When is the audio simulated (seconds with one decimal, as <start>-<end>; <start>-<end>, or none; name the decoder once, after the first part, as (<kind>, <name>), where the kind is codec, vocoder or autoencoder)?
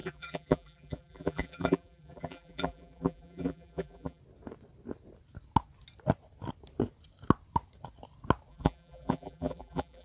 0.0-4.2 (vocoder, BigVGAN v2); 8.5-10.0